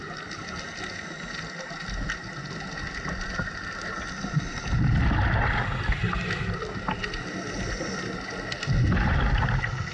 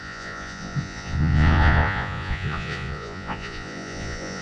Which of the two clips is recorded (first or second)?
first